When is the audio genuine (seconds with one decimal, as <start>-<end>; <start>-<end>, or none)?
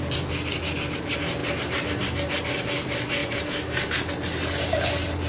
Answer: 0.0-3.2; 4.1-5.3